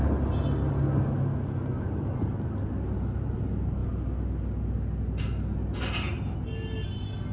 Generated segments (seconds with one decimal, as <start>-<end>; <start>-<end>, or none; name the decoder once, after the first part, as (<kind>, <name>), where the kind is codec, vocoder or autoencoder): none